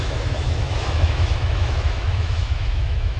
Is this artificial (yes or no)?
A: yes